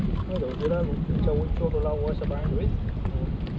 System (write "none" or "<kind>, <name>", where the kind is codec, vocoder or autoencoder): none